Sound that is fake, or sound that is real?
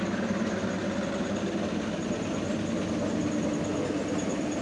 real